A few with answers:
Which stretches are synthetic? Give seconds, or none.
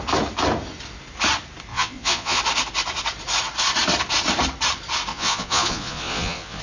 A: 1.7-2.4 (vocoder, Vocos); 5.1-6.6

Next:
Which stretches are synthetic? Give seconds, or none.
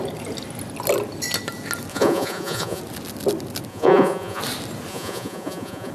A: 1.9-2.8 (vocoder, Vocos); 3.7-4.4; 4.9-5.9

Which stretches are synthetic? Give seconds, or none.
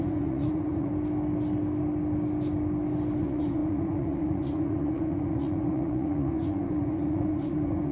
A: 0.0-0.9 (vocoder, Vocos); 3.2-7.9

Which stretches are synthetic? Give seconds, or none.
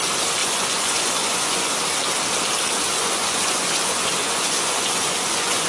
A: 0.4-1.7 (vocoder, Vocos); 2.8-5.7